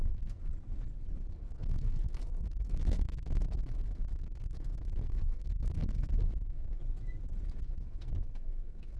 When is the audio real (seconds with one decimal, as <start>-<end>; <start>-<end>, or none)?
0.5-1.3; 6.8-7.6